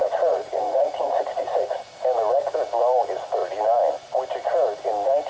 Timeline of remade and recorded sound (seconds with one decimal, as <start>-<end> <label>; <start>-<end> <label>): 0.0-1.8 remade; 1.8-5.3 recorded